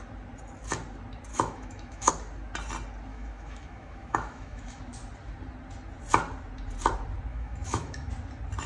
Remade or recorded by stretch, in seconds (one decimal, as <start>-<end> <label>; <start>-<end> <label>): 0.0-1.3 recorded; 1.3-2.1 remade; 2.1-3.1 recorded; 3.1-4.8 remade; 4.8-7.3 recorded; 7.3-8.1 remade; 8.1-8.7 recorded